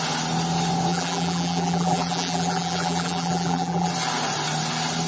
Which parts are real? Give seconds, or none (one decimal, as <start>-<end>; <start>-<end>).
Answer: 0.0-0.9; 3.9-5.1